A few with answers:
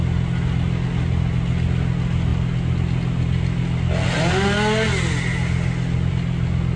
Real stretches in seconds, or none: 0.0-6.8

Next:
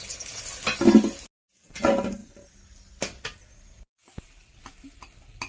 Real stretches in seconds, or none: 0.0-5.5